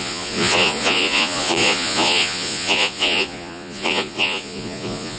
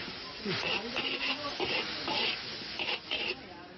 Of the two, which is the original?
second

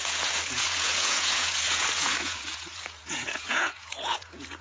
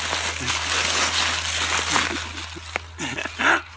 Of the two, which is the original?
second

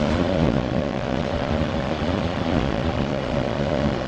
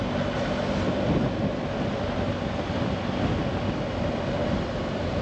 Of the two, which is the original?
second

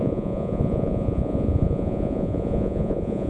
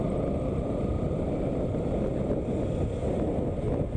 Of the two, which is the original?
second